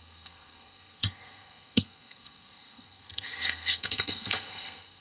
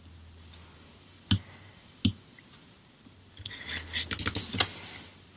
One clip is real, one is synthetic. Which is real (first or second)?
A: second